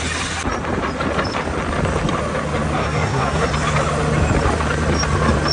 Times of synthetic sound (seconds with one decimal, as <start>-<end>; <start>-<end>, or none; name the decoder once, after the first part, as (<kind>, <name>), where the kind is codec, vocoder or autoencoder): 2.8-3.5 (codec, SNAC)